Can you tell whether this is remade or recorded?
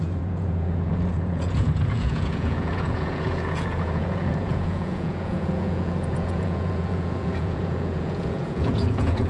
remade